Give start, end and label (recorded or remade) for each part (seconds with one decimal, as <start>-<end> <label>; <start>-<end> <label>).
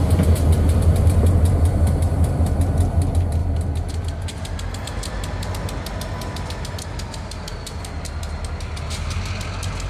0.0-9.9 recorded